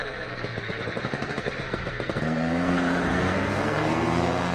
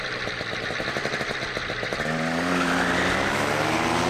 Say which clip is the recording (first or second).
second